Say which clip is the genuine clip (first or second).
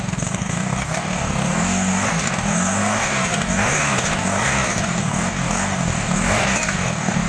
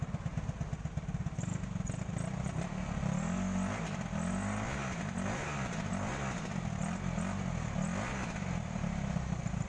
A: second